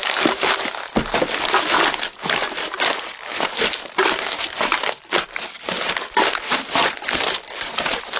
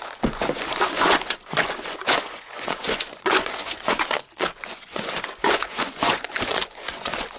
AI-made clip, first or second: second